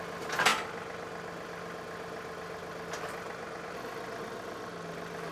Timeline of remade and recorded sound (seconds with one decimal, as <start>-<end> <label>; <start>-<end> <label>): 0.0-5.3 recorded